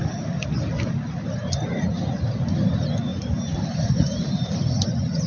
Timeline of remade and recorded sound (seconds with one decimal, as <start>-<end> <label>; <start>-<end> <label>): 0.0-3.1 recorded; 3.1-4.5 remade; 4.5-5.3 recorded